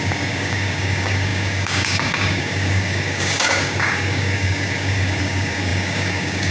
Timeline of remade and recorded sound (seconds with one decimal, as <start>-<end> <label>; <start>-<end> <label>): 0.0-6.5 remade